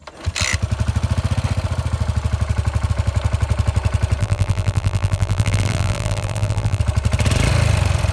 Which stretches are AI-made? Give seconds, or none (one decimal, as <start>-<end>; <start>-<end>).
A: 4.2-6.8